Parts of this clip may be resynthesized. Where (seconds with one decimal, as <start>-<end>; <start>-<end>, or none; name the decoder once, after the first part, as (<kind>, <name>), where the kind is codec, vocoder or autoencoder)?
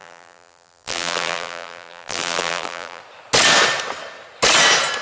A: 0.0-3.0 (vocoder, BigVGAN v2)